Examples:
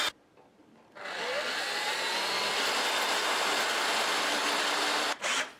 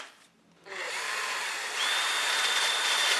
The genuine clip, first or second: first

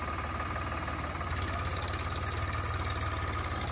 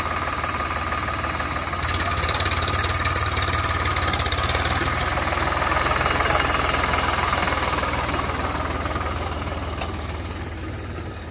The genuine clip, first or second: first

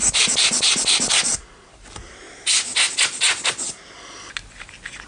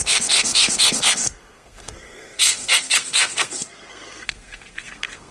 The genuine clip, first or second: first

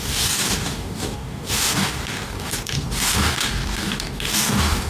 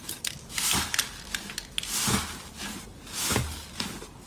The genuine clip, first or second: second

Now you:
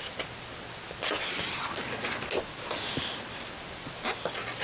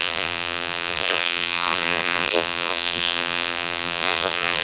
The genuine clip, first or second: first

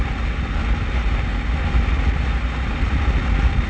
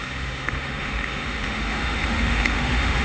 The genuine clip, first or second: first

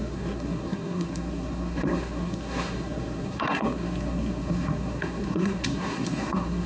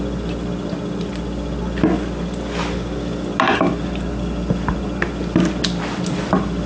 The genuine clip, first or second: second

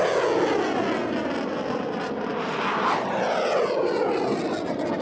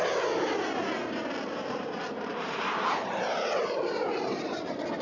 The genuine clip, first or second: first